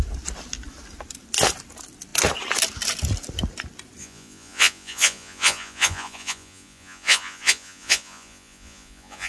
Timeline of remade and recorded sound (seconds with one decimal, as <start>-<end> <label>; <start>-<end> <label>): 0.0-4.0 recorded; 4.0-9.3 remade